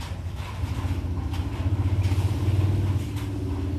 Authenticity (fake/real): real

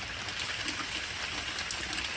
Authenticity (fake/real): real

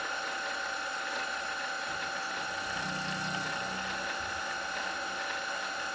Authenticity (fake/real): real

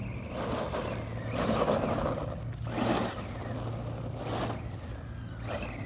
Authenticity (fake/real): real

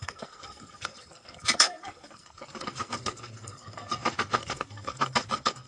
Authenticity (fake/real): fake